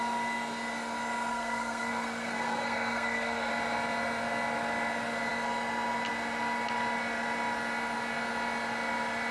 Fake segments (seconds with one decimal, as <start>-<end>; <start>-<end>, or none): 1.3-3.5